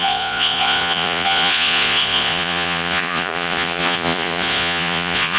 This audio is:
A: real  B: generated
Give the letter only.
B